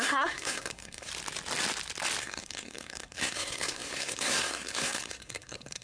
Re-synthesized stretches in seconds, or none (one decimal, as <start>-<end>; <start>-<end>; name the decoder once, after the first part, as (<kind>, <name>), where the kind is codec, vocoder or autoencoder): 0.0-1.1 (codec, SNAC); 2.2-5.8